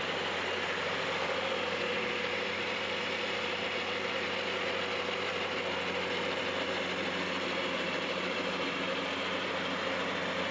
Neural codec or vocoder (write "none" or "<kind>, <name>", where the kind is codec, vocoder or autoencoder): none